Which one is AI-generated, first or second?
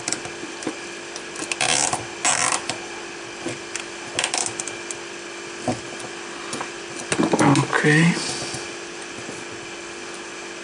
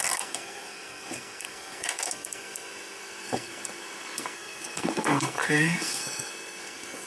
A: second